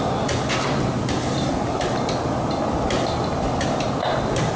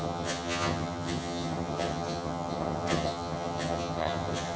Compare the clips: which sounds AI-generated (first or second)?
second